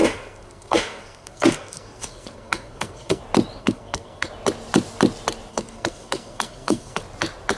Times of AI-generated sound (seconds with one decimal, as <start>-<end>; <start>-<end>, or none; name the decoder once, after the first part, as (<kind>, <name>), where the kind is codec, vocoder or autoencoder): 0.0-3.2 (codec, SNAC); 3.6-4.3; 5.5-7.0